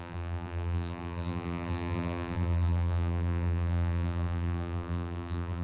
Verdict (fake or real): fake